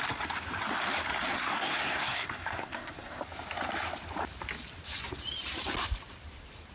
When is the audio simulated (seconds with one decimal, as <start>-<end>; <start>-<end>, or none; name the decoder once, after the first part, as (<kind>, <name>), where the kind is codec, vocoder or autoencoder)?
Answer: 1.3-3.2 (codec, SNAC)

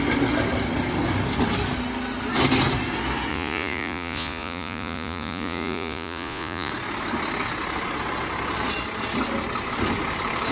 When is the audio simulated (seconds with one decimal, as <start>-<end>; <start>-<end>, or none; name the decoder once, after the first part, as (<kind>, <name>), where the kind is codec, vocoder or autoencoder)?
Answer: 3.3-6.7 (vocoder, Vocos)

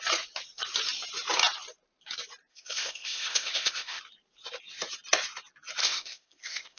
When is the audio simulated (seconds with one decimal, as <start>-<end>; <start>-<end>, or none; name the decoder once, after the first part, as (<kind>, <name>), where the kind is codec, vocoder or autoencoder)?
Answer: 2.5-4.0 (codec, ZipCodec); 5.8-6.8

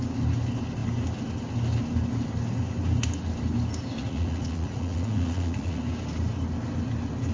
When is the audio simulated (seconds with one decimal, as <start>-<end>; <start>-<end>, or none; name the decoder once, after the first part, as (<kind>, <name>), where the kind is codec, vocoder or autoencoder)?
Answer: 4.0-5.8 (vocoder, Vocos)

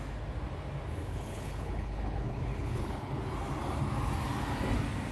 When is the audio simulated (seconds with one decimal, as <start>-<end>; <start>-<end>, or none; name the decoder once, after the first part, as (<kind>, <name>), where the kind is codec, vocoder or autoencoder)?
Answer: 1.1-3.2 (codec, HILCodec)

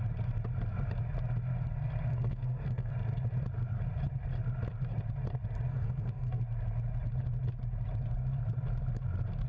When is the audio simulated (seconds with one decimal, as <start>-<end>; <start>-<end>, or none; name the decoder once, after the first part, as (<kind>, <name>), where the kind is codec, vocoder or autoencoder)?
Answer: 2.1-2.9 (codec, SNAC); 5.7-6.4

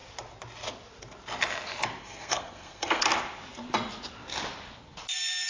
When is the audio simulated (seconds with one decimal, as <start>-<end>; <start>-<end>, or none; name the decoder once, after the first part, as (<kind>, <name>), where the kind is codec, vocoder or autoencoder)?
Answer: 2.0-3.0 (codec, SNAC)